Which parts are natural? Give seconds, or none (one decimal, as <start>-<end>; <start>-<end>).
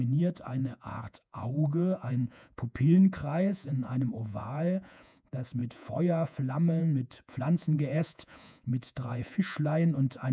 none